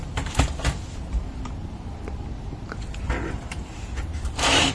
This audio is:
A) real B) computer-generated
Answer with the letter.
B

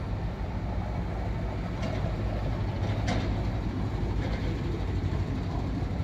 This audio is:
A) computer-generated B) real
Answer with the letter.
B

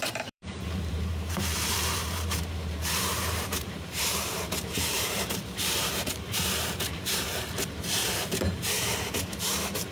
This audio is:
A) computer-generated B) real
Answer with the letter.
A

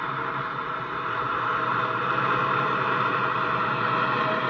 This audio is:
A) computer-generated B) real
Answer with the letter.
A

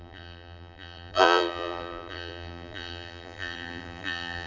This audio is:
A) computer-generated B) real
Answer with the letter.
A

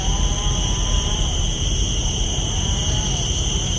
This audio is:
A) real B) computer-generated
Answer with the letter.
B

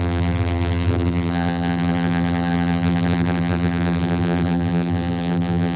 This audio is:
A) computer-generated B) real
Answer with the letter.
A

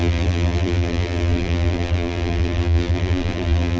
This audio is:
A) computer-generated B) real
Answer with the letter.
A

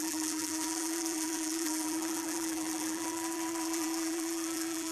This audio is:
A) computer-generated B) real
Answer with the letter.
A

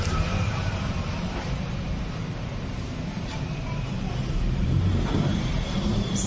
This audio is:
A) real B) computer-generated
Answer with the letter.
B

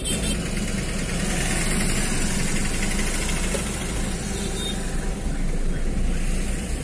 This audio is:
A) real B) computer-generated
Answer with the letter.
A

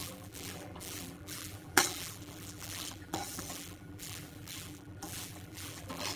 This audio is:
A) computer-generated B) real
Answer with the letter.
A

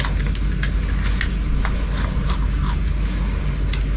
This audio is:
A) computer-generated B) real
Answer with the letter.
B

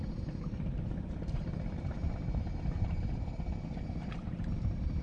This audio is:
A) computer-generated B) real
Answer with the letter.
A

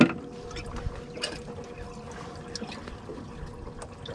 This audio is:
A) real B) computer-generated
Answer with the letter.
A